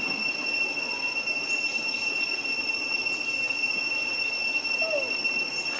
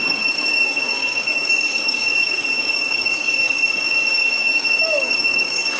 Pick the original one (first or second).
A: first